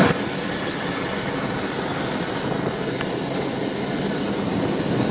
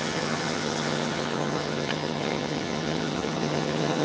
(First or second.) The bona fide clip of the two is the first